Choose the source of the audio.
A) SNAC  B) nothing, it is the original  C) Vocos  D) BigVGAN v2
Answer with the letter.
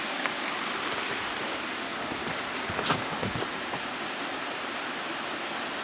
B